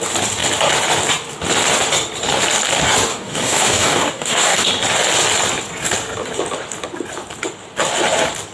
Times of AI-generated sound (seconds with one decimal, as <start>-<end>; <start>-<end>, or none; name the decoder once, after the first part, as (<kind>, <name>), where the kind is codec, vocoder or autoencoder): 3.1-4.7 (codec, DAC)